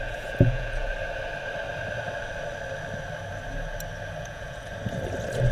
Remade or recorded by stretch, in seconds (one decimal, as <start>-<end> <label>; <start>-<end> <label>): 0.0-0.9 remade; 0.9-4.2 recorded; 4.2-4.7 remade; 4.7-5.5 recorded